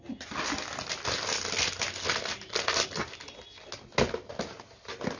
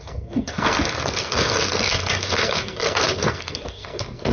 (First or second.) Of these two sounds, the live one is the first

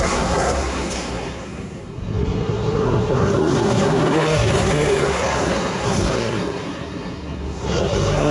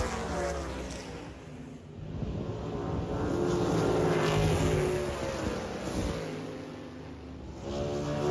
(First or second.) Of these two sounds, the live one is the second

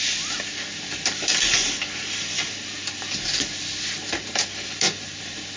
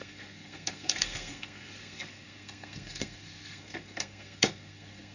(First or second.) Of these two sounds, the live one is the first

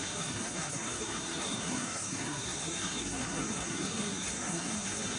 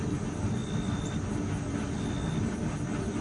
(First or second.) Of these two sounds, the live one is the second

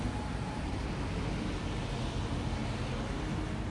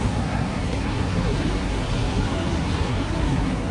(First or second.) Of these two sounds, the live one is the first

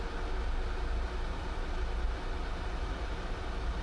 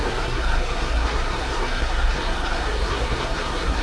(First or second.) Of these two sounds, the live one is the first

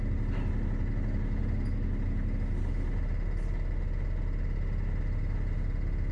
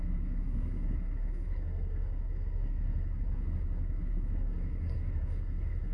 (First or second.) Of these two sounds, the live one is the first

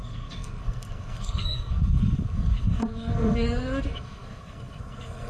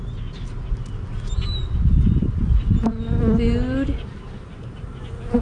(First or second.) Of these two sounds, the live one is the second